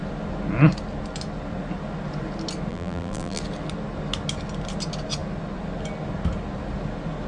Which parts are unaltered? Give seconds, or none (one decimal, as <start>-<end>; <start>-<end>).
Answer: 0.0-2.7; 3.4-7.3

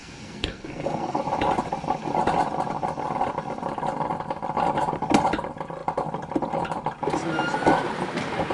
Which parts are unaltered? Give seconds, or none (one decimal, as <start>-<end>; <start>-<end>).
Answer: 1.2-8.5

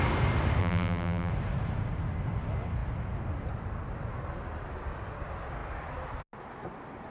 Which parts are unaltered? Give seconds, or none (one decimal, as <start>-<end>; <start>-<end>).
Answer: 0.0-0.6; 1.3-7.1

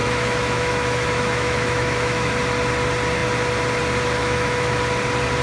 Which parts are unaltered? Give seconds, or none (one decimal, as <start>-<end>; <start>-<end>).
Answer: 2.3-4.2; 4.8-5.4

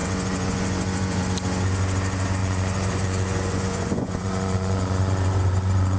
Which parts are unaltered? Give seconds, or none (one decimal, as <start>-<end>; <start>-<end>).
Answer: 1.2-2.4

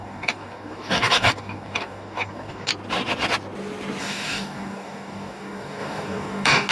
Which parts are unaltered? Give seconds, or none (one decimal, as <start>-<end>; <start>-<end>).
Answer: 2.7-4.0